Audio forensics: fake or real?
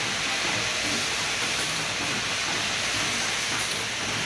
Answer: real